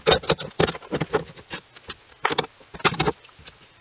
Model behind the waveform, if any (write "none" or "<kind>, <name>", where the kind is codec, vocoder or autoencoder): none